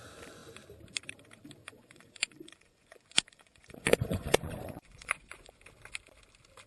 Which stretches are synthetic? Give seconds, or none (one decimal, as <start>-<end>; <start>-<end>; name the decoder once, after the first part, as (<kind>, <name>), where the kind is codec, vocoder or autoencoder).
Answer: 1.6-5.6 (vocoder, Vocos)

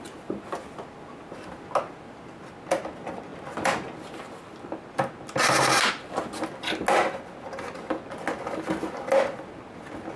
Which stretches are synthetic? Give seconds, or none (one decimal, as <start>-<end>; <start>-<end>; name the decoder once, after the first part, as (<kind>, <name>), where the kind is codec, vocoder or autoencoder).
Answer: none

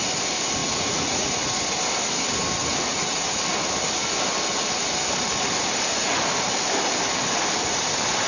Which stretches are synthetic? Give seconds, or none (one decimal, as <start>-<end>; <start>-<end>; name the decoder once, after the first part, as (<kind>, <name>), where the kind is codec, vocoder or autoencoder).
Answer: 0.6-1.5 (vocoder, Vocos); 2.6-3.4

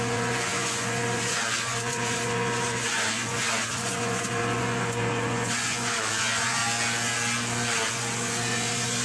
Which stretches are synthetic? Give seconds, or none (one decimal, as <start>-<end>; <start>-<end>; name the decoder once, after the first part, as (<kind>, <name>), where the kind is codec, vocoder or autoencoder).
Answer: 0.0-6.6 (vocoder, Vocos); 7.9-9.0